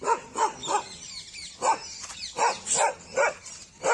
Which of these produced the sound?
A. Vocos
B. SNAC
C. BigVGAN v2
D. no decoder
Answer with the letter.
D